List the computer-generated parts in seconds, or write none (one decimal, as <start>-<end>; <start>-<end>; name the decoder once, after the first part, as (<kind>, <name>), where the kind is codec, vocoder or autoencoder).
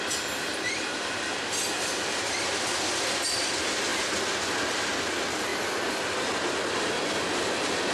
none